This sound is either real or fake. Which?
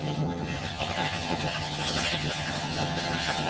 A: fake